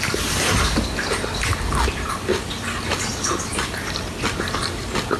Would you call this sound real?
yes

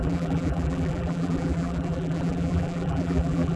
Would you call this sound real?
no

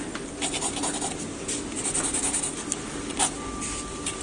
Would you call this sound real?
yes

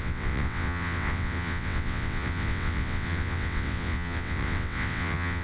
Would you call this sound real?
no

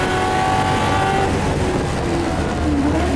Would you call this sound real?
yes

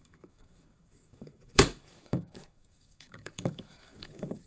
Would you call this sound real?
no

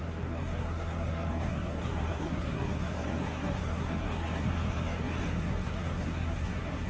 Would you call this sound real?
no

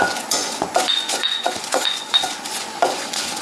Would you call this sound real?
no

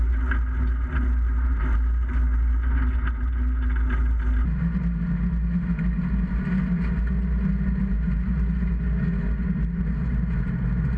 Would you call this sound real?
yes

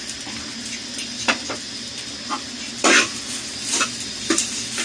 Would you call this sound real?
yes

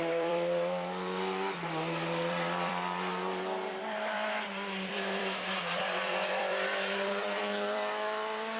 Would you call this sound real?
no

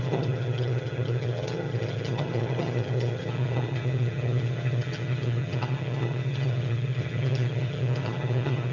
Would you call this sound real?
no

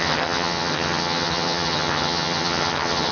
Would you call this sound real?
no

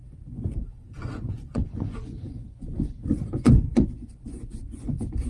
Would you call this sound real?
no